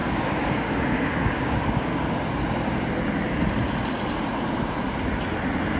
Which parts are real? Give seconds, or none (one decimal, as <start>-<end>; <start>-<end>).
1.9-5.8